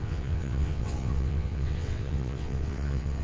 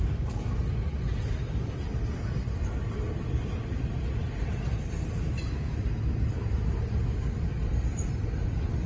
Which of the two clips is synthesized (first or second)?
first